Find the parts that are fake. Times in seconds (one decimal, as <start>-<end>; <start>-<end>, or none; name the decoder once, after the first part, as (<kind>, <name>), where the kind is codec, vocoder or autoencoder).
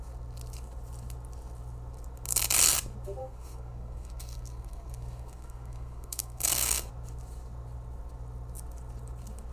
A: 3.2-6.9 (codec, SNAC)